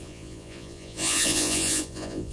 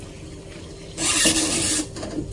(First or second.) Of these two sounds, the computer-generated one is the first